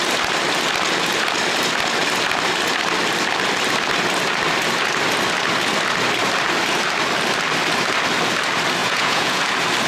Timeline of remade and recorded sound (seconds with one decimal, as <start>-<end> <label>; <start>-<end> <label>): 0.0-8.8 recorded; 8.8-9.4 remade; 9.4-9.9 recorded